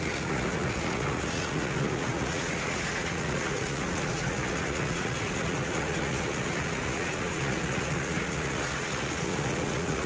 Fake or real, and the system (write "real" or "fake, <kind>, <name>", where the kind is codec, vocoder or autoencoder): fake, vocoder, Vocos